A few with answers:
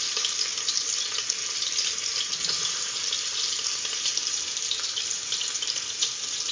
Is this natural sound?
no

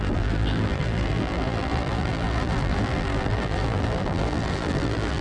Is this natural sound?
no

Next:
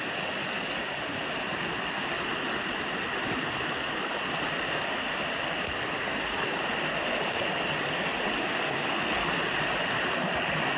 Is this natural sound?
yes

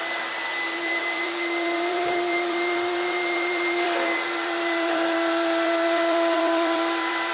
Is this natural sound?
no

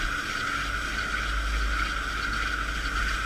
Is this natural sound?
yes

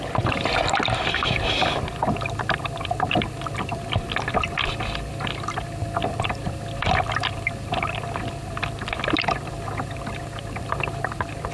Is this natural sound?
no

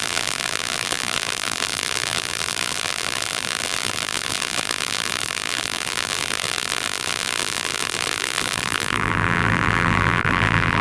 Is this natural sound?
no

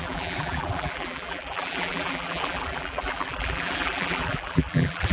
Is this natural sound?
no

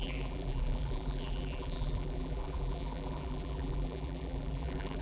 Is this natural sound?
no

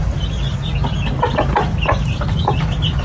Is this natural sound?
yes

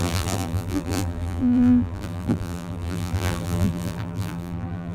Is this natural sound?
no